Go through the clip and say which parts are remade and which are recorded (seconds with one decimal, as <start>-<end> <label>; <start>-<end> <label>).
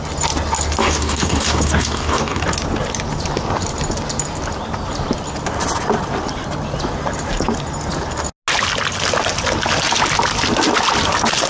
0.0-0.8 recorded; 0.8-2.4 remade; 2.4-11.5 recorded